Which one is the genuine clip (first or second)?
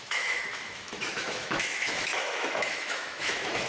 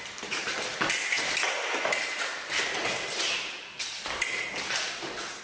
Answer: second